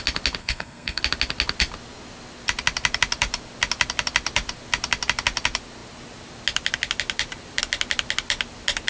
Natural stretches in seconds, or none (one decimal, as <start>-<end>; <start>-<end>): 0.0-0.4; 1.0-8.9